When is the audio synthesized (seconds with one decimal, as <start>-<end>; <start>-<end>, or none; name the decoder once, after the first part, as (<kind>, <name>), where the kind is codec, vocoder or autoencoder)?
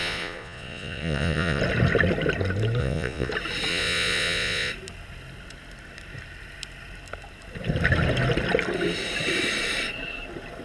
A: 0.0-1.6 (vocoder, Vocos); 2.8-3.3; 3.7-4.7